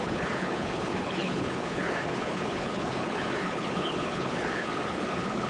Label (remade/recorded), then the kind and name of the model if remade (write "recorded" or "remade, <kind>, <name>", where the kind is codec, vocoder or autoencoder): remade, codec, HILCodec